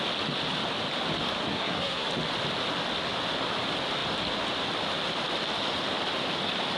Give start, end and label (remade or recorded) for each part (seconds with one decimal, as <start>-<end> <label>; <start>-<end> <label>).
0.0-1.5 recorded; 1.5-2.1 remade; 2.1-6.8 recorded